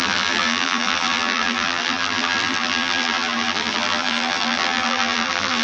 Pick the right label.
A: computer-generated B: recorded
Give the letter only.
A